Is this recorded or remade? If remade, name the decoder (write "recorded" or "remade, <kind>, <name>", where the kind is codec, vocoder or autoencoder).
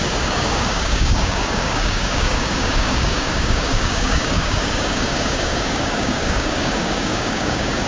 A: remade, codec, DAC